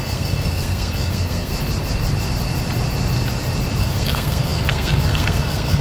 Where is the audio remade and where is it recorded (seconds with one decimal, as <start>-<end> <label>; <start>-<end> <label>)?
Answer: 0.0-1.5 remade; 1.5-3.8 recorded; 3.8-5.8 remade